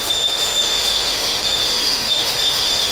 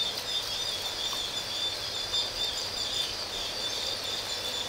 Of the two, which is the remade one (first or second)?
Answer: first